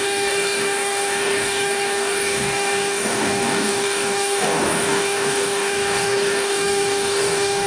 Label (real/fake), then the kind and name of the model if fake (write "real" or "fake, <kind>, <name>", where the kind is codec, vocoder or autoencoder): fake, codec, DAC